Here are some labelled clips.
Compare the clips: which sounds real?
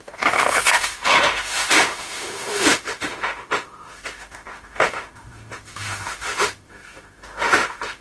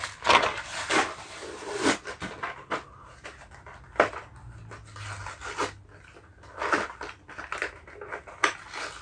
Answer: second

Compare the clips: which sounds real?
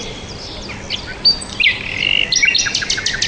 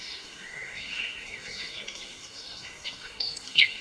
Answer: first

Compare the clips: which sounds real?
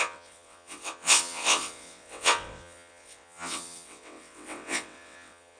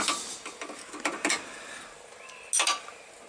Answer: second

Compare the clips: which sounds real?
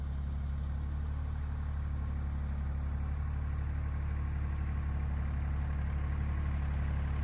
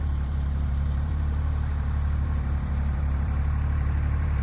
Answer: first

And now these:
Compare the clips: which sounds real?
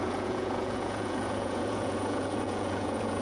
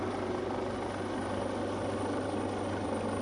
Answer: second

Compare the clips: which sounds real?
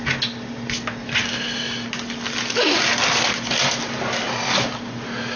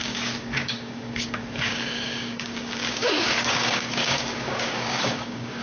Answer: first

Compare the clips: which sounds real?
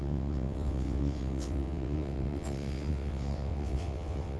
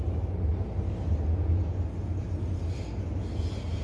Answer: second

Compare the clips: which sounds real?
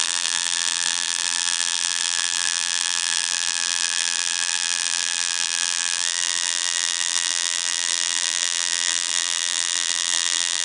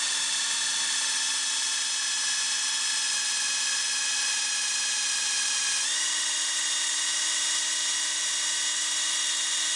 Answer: second